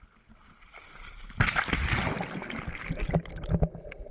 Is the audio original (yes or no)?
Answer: yes